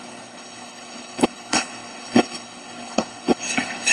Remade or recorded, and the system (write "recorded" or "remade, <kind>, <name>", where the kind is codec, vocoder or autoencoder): remade, codec, HILCodec